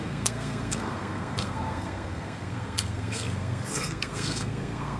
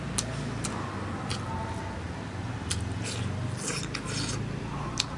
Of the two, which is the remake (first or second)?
first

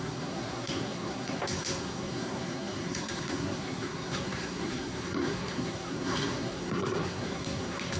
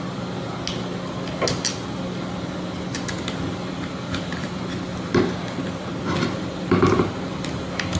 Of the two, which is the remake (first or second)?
first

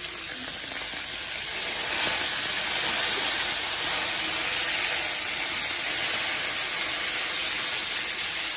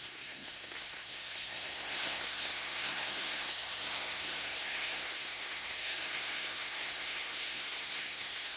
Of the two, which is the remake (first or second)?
second